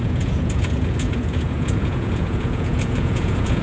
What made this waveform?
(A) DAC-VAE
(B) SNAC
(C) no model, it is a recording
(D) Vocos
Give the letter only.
D